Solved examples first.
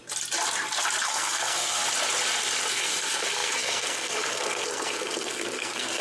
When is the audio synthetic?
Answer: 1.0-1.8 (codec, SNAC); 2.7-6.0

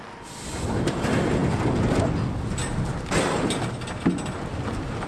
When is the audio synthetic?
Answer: none

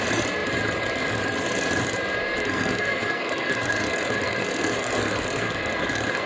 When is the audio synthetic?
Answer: 2.4-6.3 (codec, SNAC)

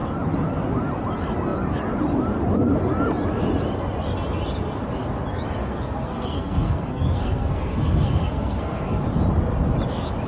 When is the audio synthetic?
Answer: 5.6-9.0 (codec, SNAC)